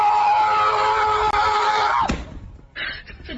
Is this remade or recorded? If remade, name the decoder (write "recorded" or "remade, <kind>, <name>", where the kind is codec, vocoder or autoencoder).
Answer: recorded